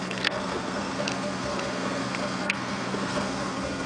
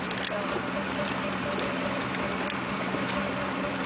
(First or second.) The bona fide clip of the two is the second